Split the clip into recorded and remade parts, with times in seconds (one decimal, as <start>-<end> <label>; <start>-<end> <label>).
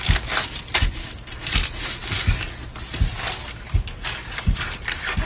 0.0-5.3 recorded